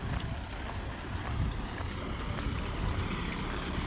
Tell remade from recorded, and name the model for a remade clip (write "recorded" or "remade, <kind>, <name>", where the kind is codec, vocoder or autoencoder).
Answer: recorded